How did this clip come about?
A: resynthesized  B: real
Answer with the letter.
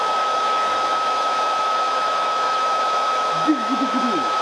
A